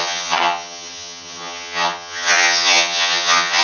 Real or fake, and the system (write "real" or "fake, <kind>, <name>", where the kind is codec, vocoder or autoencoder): fake, vocoder, HiFi-GAN